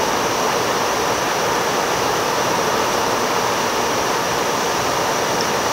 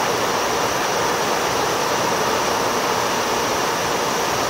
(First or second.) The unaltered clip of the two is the second